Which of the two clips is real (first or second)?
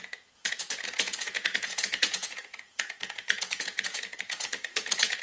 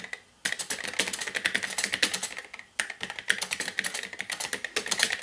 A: second